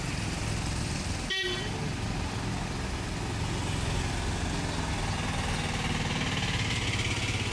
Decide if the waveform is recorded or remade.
recorded